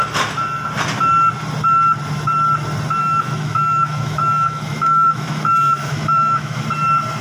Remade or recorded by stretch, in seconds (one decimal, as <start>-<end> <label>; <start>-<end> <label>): 0.0-3.0 recorded; 3.0-6.6 remade; 6.6-7.2 recorded

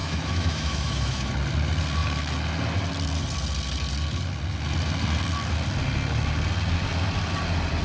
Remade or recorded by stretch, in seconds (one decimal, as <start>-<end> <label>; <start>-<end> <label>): 0.0-1.3 remade; 1.3-7.8 recorded